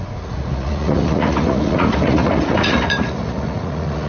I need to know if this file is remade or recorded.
remade